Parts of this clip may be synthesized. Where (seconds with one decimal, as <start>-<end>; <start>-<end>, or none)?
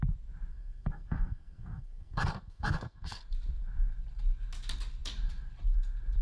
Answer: 0.5-3.2